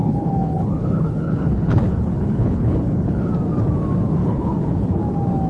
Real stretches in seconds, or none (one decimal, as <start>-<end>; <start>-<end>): 3.3-4.2; 5.0-5.5